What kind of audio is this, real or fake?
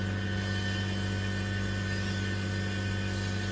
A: real